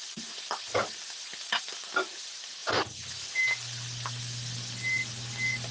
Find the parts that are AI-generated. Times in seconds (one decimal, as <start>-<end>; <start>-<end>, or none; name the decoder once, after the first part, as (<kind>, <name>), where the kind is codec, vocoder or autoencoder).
none